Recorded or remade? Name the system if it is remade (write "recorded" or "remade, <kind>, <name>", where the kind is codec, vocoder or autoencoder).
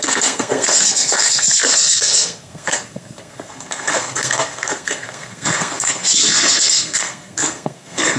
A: remade, codec, SNAC